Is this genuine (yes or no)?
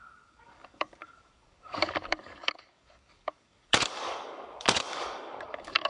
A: no